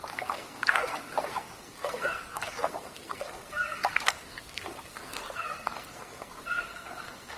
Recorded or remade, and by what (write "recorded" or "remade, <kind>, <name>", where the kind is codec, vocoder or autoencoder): remade, codec, SNAC